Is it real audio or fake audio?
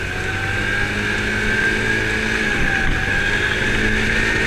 real